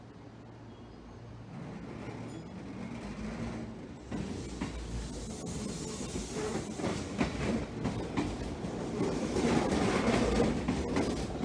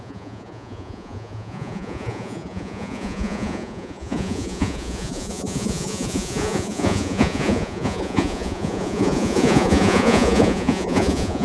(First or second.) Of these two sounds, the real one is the first